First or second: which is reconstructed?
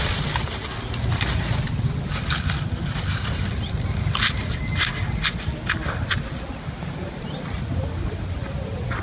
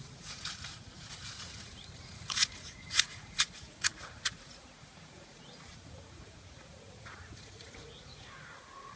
second